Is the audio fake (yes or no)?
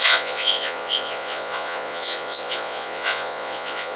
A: yes